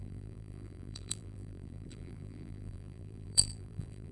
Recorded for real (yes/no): no